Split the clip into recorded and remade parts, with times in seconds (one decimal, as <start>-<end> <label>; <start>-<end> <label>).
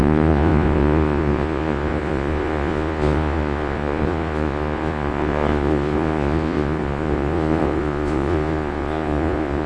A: 0.0-9.7 remade